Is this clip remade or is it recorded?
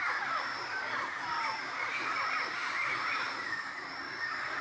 recorded